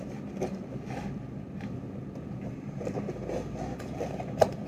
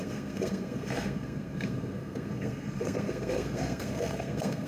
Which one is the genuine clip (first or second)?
first